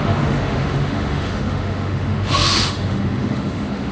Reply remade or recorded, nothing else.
remade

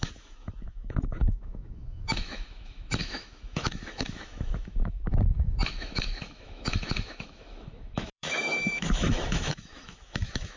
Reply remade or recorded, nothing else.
remade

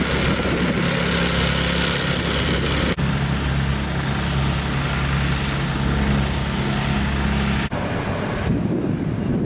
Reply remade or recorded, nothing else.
recorded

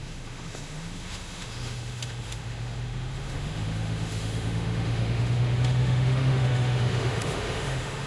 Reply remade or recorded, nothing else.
remade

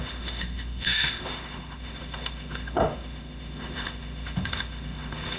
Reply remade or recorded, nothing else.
remade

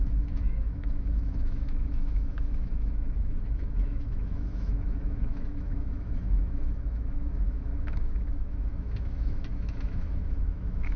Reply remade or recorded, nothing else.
remade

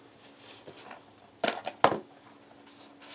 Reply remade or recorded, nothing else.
recorded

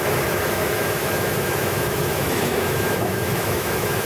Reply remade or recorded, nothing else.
remade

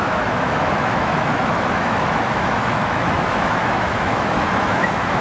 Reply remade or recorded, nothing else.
remade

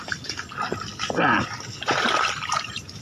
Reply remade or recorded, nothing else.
recorded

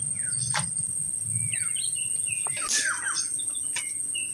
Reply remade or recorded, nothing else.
recorded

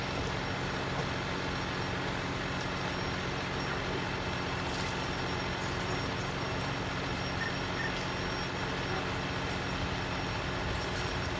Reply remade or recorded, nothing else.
recorded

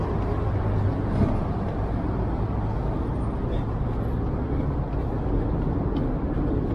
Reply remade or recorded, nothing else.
recorded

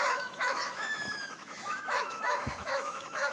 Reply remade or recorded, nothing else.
remade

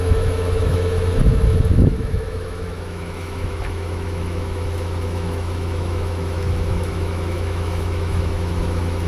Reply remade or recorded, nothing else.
remade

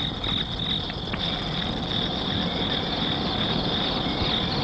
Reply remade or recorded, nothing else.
recorded